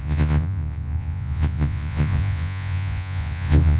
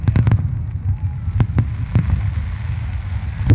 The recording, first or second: second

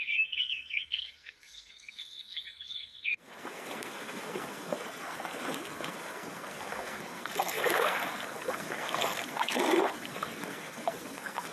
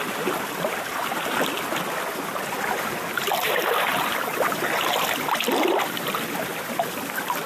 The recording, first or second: second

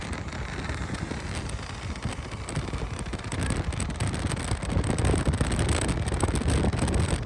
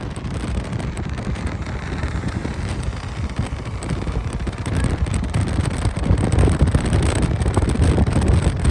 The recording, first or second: first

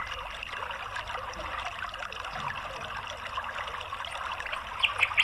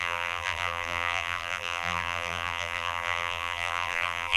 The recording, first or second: first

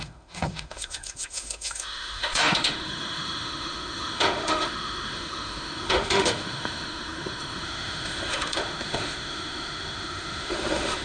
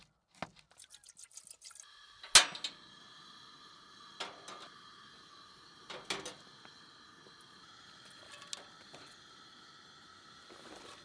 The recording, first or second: second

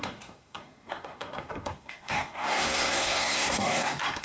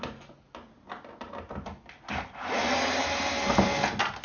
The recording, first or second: second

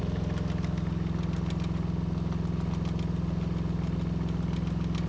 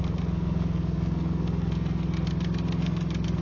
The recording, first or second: first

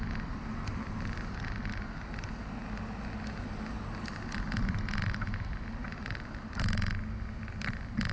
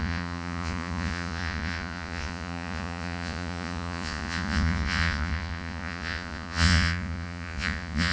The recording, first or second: first